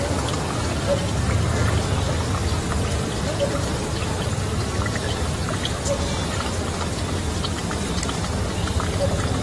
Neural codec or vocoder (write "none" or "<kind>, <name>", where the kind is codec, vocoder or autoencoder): none